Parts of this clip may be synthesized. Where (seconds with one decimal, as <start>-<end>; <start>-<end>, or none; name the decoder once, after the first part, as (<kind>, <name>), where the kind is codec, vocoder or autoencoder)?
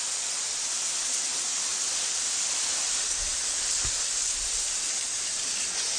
none